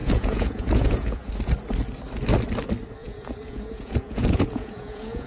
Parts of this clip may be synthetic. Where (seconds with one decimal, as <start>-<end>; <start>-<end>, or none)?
0.0-1.3; 3.0-5.3